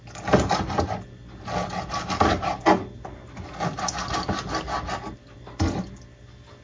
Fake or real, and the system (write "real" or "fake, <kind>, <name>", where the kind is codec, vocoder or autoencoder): real